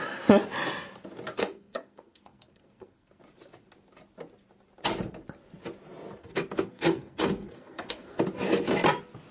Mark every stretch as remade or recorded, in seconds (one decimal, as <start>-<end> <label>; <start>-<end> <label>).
0.0-1.4 recorded; 1.4-3.2 remade; 3.2-6.2 recorded; 6.2-8.2 remade; 8.2-9.3 recorded